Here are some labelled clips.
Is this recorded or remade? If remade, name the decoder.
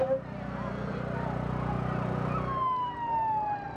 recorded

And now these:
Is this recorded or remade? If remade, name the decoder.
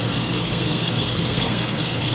remade, codec, SNAC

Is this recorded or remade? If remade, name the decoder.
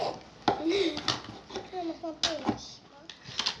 recorded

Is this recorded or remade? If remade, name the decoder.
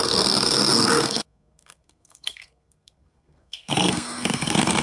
remade, codec, SNAC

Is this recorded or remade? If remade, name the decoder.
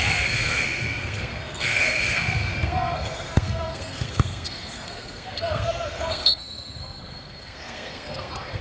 remade, codec, SNAC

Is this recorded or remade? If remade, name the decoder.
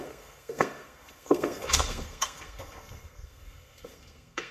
remade, codec, SNAC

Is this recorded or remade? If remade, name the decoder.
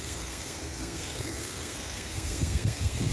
remade, codec, SNAC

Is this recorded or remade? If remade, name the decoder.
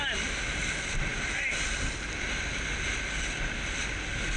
recorded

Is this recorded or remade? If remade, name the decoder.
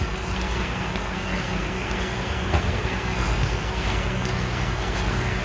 remade, codec, SNAC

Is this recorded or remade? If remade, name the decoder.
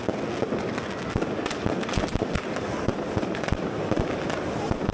recorded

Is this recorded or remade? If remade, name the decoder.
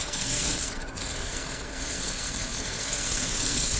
remade, codec, SNAC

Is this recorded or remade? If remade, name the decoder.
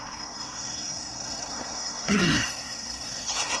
remade, codec, SNAC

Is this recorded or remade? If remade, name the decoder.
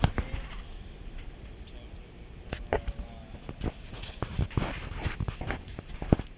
recorded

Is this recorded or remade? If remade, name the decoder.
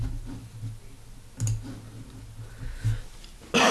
recorded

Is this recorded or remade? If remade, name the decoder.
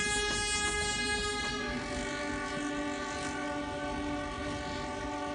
recorded